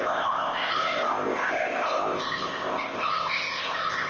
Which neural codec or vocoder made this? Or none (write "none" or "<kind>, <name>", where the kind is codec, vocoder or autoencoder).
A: codec, ZipCodec